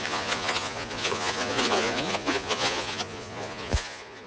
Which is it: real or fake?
fake